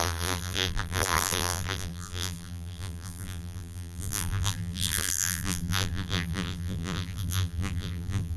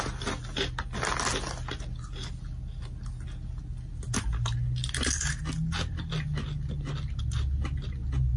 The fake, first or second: first